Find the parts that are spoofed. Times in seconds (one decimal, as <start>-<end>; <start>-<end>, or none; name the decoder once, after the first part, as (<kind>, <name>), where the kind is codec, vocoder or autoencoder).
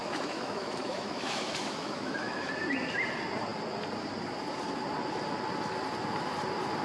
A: 0.0-2.5 (autoencoder, DAC-VAE)